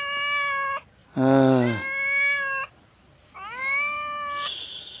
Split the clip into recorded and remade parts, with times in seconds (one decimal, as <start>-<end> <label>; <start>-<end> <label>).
0.0-5.0 recorded